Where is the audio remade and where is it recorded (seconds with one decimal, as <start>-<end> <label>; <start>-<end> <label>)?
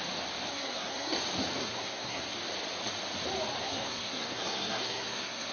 0.0-0.5 recorded; 0.5-1.2 remade; 1.2-1.6 recorded; 1.6-2.2 remade; 2.2-3.6 recorded; 3.6-5.5 remade